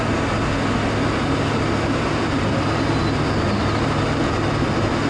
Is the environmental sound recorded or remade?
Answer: recorded